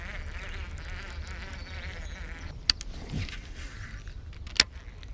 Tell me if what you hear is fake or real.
real